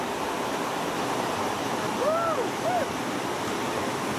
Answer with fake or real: real